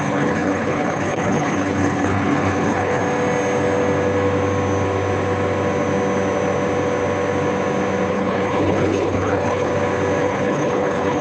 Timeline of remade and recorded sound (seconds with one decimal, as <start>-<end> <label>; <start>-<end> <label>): 0.0-3.0 remade; 3.0-8.1 recorded; 8.1-9.7 remade; 9.7-10.2 recorded; 10.2-11.2 remade